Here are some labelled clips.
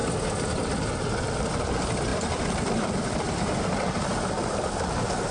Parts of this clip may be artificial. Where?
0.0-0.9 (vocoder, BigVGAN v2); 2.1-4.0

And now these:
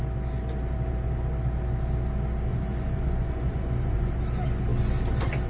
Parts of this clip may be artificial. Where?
2.5-4.2 (vocoder, Vocos)

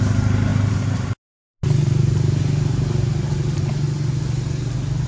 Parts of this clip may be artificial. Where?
none

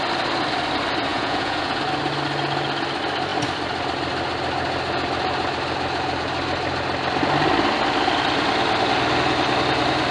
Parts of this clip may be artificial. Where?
1.1-1.8 (vocoder, Vocos)

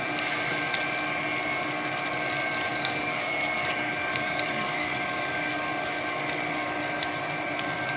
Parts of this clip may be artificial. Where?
2.7-5.9 (codec, DAC)

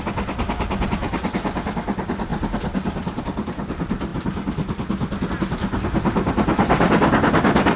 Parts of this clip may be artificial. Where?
none